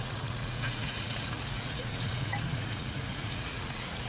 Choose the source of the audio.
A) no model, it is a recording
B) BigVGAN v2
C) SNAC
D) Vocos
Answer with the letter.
D